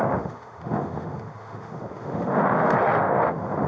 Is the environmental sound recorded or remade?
remade